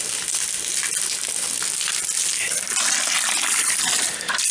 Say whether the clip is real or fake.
real